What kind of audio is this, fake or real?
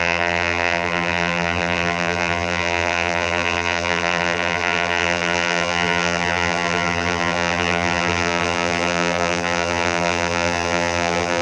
fake